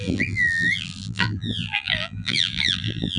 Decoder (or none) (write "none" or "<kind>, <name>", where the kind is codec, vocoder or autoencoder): vocoder, BigVGAN v2